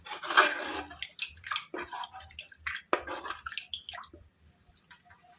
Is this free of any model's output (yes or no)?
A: yes